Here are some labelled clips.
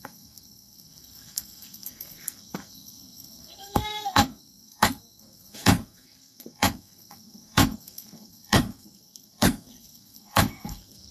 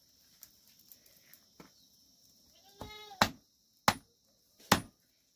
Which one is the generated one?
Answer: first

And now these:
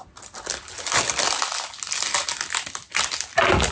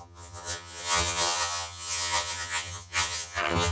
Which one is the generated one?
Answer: second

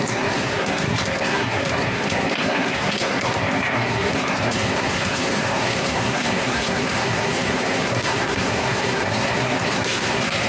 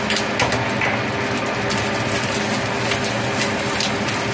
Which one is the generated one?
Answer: first